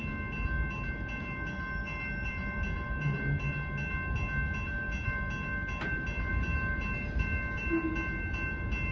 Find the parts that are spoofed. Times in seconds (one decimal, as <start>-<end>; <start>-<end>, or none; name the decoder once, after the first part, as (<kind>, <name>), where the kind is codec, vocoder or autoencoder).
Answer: none

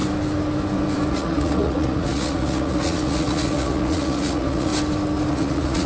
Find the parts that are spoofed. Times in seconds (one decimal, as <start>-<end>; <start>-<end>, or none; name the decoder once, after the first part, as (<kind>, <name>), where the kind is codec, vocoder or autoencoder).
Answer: 1.1-4.7 (vocoder, Vocos); 5.3-5.9